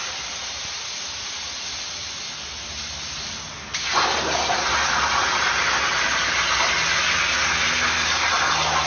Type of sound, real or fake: real